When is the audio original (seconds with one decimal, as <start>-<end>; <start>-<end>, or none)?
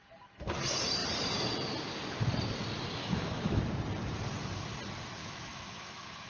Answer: 0.0-3.0; 3.6-5.2